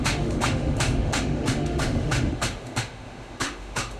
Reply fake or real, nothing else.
fake